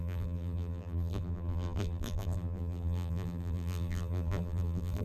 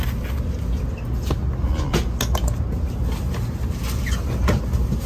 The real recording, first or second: second